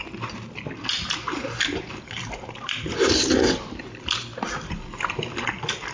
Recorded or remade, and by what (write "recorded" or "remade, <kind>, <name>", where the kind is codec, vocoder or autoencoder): recorded